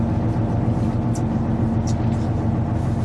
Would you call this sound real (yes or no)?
yes